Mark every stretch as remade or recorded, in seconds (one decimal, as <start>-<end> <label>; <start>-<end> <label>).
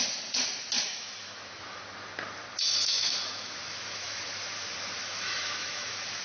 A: 0.0-0.9 recorded; 0.9-1.8 remade; 1.8-2.8 recorded; 2.8-4.2 remade; 4.2-5.0 recorded; 5.0-6.2 remade